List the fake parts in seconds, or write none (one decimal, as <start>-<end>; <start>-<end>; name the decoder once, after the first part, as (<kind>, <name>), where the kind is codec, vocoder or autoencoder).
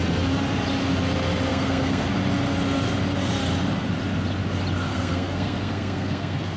1.5-2.1 (codec, SNAC); 4.9-6.6